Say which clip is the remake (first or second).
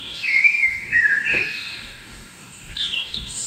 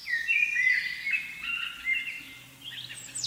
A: first